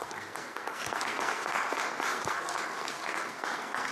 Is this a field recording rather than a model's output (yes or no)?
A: no